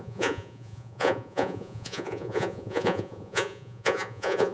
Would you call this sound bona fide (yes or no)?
no